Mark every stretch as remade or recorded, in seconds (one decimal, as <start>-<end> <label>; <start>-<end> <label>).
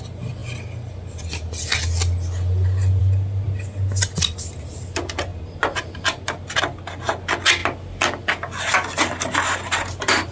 0.0-10.3 recorded